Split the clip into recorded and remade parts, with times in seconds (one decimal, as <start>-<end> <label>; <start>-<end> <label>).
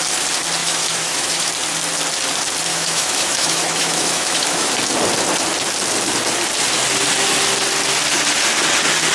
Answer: 0.0-0.6 recorded; 0.6-1.5 remade; 1.5-2.7 recorded; 2.7-4.7 remade; 4.7-9.1 recorded